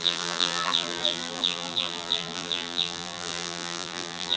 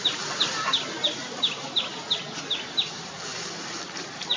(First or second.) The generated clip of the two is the first